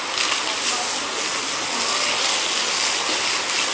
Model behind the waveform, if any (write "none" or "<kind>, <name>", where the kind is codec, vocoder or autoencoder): none